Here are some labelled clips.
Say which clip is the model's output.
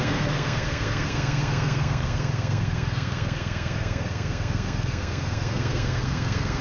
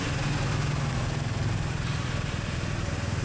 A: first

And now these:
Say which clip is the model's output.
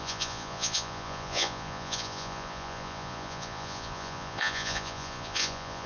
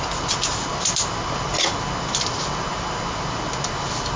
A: first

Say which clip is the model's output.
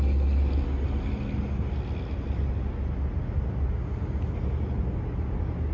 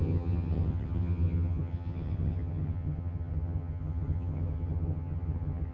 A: second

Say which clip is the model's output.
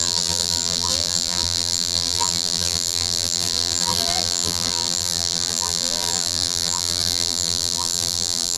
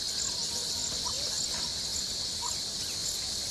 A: first